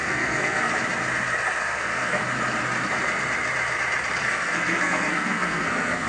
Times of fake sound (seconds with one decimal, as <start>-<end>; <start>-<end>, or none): 0.0-0.7; 1.6-2.2; 4.2-6.1